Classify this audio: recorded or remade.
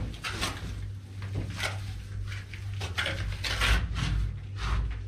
recorded